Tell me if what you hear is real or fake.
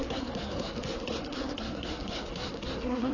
fake